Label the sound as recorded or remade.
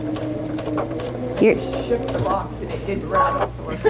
recorded